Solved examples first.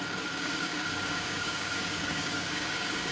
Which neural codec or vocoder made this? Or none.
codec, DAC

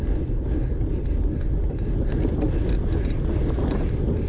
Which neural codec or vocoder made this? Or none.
none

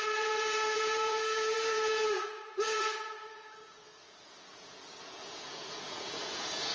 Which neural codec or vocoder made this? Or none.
vocoder, Vocos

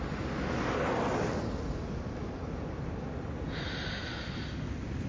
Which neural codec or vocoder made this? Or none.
none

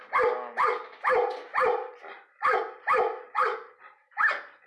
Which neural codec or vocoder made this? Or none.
none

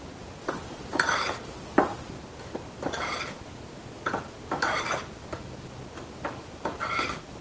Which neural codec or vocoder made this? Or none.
vocoder, BigVGAN v2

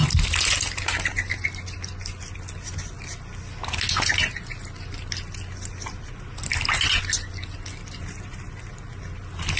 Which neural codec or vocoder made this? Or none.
none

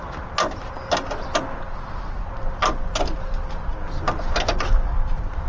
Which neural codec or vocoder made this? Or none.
none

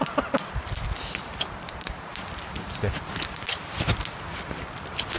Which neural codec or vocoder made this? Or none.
none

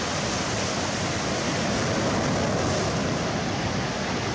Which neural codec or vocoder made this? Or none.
none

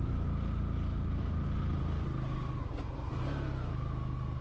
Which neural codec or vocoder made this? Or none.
none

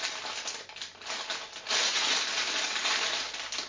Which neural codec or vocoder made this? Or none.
none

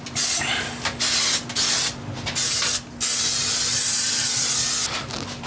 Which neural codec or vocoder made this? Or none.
none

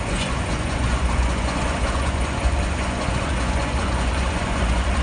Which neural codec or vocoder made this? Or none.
vocoder, Vocos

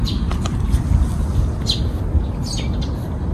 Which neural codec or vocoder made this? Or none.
none